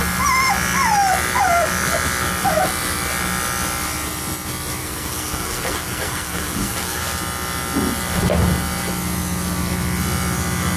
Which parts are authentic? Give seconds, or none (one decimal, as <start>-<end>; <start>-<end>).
0.0-4.8; 7.0-10.8